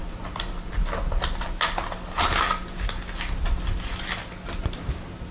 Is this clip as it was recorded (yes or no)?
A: yes